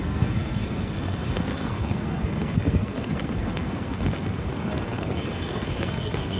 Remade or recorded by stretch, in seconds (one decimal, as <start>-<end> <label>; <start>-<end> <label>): 0.0-6.4 remade